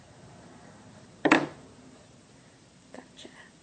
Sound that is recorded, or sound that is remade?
remade